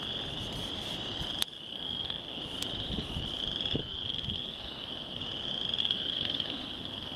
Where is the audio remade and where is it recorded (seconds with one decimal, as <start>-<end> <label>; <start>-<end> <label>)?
0.0-1.7 recorded; 1.7-2.4 remade; 2.4-3.8 recorded; 3.8-5.2 remade; 5.2-5.8 recorded; 5.8-7.2 remade